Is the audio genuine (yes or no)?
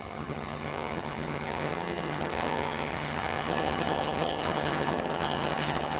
no